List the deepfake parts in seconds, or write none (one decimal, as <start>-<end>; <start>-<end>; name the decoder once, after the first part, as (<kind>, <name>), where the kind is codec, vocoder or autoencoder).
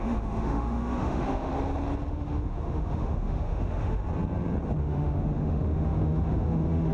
0.0-1.5 (autoencoder, DAC-VAE); 2.1-4.0; 4.8-6.9